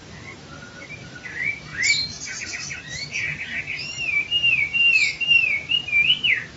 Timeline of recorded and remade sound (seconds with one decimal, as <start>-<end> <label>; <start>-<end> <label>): 0.0-0.6 recorded; 0.6-6.6 remade